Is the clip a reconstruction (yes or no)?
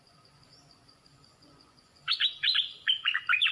yes